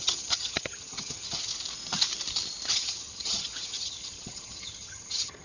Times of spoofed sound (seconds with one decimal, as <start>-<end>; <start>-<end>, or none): 0.0-1.5; 2.7-5.4